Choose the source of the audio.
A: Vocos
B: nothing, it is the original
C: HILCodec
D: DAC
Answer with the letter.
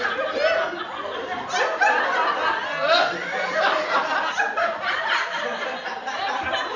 B